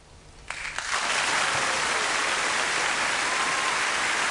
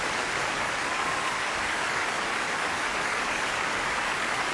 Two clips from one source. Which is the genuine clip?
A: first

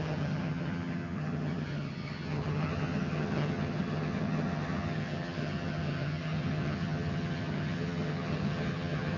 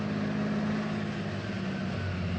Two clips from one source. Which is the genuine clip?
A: second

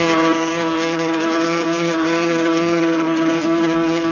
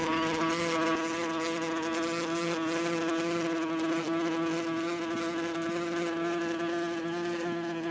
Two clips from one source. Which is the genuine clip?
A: second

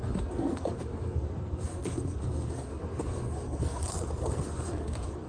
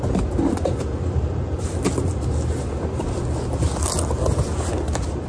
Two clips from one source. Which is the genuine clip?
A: second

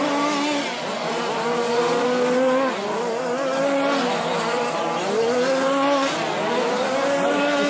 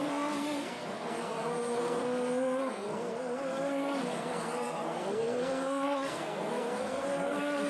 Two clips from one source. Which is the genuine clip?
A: first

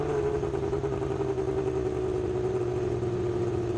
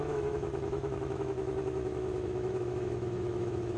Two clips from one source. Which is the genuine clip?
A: first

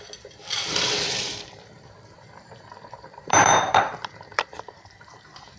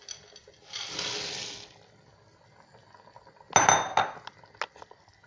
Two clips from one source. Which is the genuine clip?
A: second